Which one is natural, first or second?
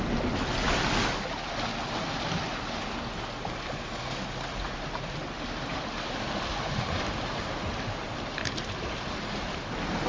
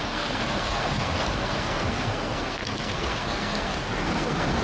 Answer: first